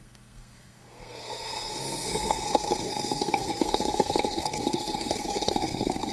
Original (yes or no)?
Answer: no